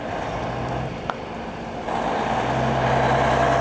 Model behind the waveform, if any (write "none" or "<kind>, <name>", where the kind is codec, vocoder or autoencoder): none